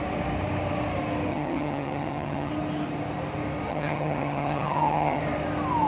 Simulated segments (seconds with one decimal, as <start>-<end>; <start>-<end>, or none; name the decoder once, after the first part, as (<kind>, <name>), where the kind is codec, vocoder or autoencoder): 1.3-2.5 (vocoder, HiFi-GAN); 3.7-5.2

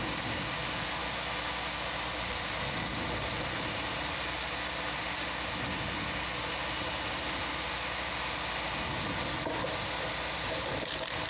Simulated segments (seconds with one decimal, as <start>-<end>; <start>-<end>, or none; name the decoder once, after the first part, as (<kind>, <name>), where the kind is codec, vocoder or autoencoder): none